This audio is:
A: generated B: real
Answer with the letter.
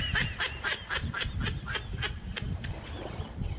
B